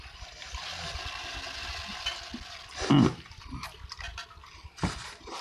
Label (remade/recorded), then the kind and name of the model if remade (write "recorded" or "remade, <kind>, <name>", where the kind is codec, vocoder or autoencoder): recorded